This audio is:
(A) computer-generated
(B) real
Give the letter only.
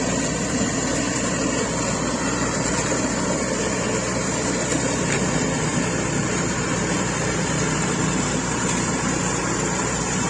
A